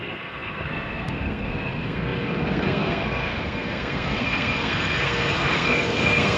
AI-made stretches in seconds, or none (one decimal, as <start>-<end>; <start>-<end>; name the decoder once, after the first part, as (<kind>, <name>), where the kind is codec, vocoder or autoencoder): 0.0-6.4 (codec, SNAC)